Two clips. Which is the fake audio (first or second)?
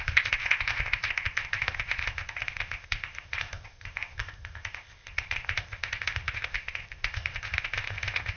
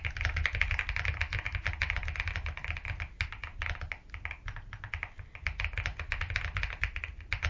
first